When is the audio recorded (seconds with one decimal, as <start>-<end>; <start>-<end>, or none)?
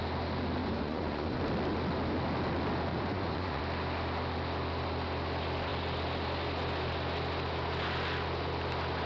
0.0-0.6; 1.4-2.9; 3.6-9.1